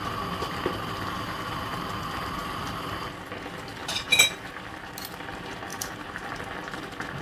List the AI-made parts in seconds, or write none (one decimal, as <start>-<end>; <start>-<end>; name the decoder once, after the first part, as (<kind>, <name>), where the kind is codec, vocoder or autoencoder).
2.4-2.9 (vocoder, BigVGAN v2); 5.7-6.4